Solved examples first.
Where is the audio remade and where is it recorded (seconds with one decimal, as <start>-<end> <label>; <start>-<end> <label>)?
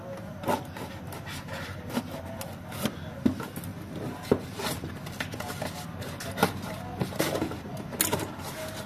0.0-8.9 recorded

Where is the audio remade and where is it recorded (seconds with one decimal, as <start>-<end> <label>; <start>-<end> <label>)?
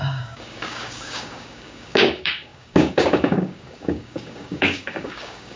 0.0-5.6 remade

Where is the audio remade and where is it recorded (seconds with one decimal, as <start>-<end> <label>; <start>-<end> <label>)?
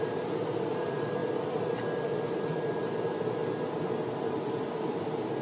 0.0-5.4 recorded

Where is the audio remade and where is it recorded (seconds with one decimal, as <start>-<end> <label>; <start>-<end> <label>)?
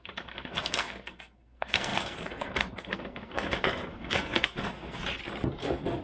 0.0-5.0 remade; 5.0-5.6 recorded; 5.6-6.0 remade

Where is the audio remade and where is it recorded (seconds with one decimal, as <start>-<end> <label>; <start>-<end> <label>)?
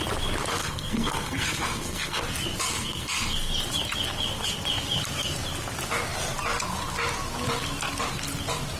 0.0-0.6 recorded; 0.6-2.2 remade; 2.2-2.7 recorded; 2.7-3.5 remade; 3.5-8.8 recorded